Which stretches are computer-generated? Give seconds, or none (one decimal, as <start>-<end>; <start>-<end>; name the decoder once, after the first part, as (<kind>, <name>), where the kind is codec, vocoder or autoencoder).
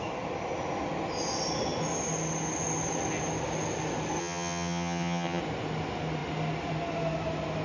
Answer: 4.2-5.4 (vocoder, HiFi-GAN)